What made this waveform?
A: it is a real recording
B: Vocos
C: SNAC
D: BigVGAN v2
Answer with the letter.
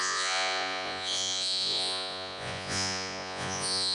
B